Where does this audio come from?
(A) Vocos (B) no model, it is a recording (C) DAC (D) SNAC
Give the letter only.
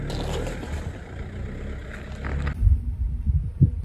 B